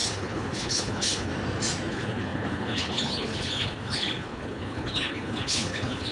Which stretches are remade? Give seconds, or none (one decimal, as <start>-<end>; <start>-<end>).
0.0-1.3; 1.9-6.1